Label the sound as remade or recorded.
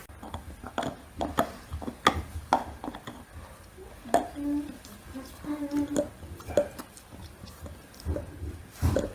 recorded